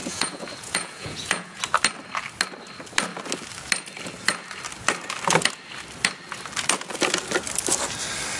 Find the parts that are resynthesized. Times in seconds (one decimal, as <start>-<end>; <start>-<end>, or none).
0.0-1.6